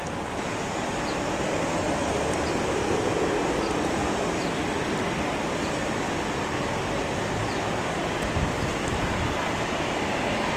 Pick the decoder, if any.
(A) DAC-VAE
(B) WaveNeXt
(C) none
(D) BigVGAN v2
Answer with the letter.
C